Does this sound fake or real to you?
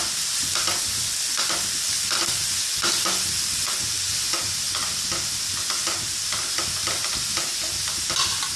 real